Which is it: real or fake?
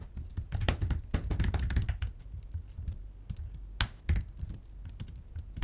real